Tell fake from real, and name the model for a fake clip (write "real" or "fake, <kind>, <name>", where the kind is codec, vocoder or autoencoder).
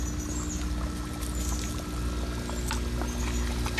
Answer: real